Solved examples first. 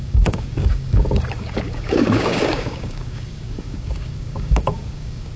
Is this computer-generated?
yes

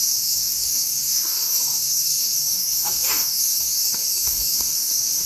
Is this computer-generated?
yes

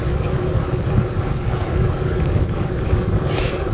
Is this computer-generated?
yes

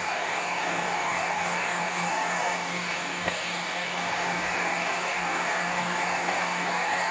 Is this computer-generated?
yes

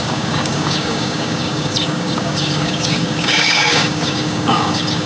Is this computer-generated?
yes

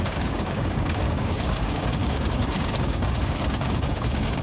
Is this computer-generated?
yes